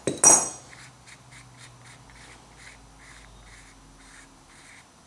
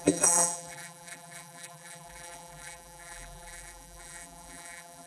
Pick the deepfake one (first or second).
second